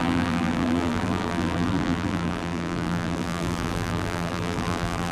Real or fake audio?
fake